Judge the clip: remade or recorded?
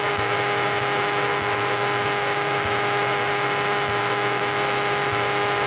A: remade